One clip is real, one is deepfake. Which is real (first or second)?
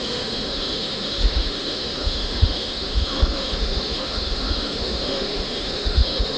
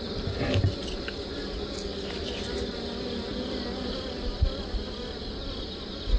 second